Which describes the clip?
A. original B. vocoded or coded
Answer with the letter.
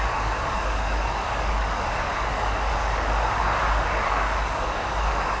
B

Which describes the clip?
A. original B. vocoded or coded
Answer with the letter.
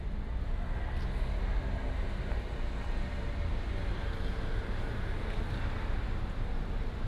A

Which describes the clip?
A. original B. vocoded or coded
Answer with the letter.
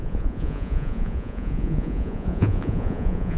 B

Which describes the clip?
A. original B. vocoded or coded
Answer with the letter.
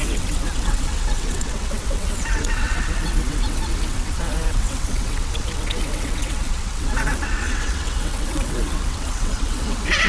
B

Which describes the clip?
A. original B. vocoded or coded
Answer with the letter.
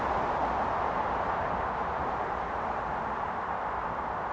A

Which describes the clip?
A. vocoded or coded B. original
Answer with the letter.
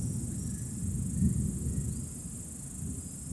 B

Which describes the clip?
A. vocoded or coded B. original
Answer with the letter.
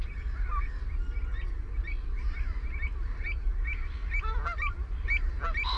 B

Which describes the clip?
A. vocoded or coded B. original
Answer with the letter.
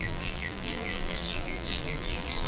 A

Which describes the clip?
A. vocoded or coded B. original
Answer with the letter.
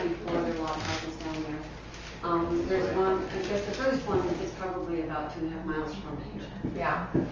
B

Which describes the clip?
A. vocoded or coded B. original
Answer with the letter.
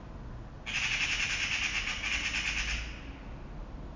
B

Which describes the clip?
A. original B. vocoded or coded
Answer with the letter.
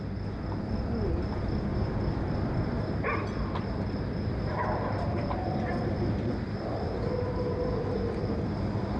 A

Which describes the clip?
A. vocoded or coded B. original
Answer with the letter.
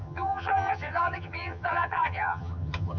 A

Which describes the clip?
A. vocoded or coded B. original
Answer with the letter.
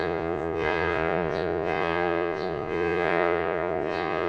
A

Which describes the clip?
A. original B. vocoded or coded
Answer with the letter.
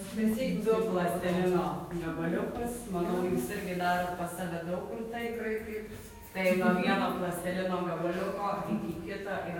B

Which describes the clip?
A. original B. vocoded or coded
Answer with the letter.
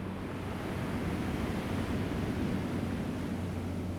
A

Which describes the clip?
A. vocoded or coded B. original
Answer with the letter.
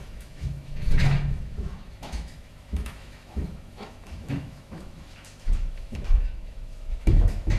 A